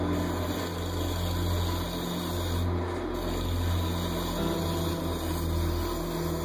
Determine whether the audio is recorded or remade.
recorded